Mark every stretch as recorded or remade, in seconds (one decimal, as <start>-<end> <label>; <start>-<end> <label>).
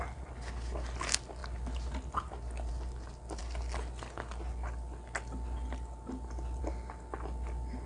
0.0-7.9 recorded